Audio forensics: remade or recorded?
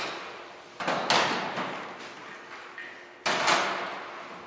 recorded